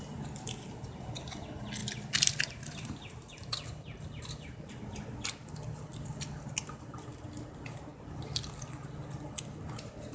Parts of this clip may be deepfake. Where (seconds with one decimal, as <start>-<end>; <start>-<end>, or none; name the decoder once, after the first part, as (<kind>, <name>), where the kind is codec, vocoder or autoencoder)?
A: 1.8-4.7 (vocoder, BigVGAN v2); 5.4-7.0; 7.9-8.9